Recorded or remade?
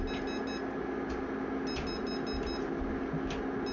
recorded